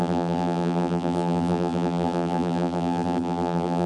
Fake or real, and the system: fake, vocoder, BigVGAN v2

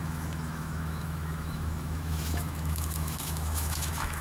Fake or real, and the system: fake, autoencoder, DAC-VAE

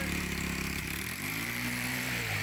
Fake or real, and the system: fake, vocoder, BigVGAN v2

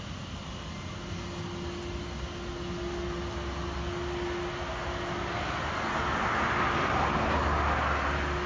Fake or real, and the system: real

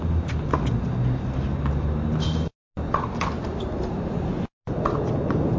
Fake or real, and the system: real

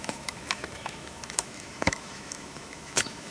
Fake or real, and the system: fake, autoencoder, DAC-VAE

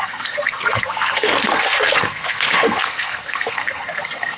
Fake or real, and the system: fake, codec, SNAC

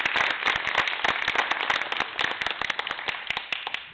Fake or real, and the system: real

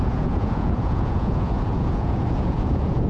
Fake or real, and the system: fake, vocoder, Vocos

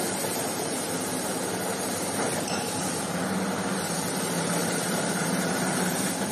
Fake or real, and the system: fake, vocoder, BigVGAN v2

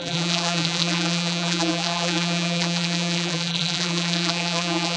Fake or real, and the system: fake, vocoder, BigVGAN v2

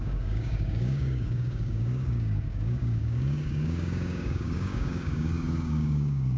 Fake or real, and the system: fake, codec, DAC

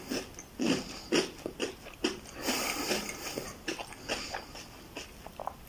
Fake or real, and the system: real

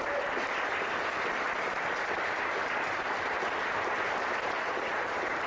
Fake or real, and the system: fake, vocoder, BigVGAN v2